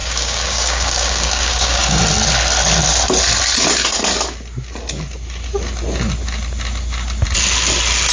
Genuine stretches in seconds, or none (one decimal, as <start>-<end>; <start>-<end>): 2.0-8.1